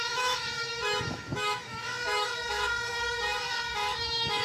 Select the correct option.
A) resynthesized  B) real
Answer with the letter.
A